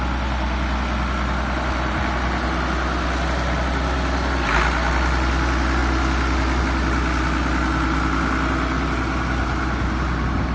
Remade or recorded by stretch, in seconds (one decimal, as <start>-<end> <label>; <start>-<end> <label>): 0.0-10.5 recorded

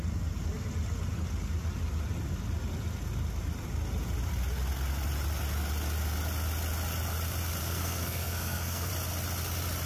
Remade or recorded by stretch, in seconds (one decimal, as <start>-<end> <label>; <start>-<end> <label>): 0.0-7.6 recorded; 7.6-8.9 remade; 8.9-9.9 recorded

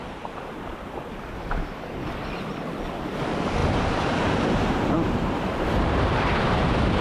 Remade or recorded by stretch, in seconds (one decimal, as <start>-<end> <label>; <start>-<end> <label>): 0.0-0.8 remade; 0.8-3.6 recorded; 3.6-6.6 remade; 6.6-7.0 recorded

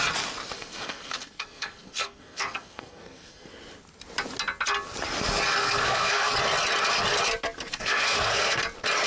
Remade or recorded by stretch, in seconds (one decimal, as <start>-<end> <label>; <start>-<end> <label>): 0.0-0.5 recorded; 0.5-3.5 remade; 3.5-5.6 recorded; 5.6-6.3 remade; 6.3-7.7 recorded; 7.7-8.6 remade; 8.6-9.1 recorded

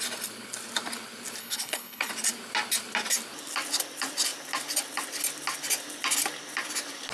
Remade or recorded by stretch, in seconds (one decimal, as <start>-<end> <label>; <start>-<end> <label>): 0.0-1.4 recorded; 1.4-2.1 remade; 2.1-7.1 recorded

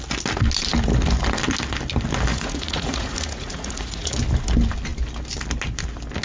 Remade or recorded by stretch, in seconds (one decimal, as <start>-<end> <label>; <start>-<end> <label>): 0.0-2.3 recorded; 2.3-4.1 remade; 4.1-6.2 recorded

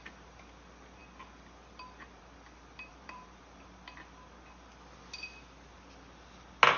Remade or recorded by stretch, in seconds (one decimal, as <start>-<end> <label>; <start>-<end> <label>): 0.0-2.9 recorded; 2.9-3.4 remade; 3.4-6.8 recorded

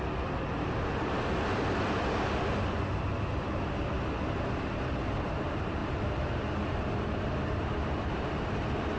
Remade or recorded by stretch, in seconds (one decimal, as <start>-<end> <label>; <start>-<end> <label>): 0.0-0.5 remade; 0.5-4.7 recorded; 4.7-5.8 remade; 5.8-6.8 recorded; 6.8-9.0 remade